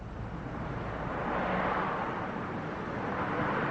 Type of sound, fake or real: real